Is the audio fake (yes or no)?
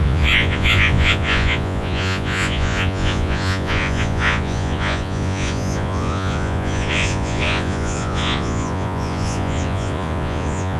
yes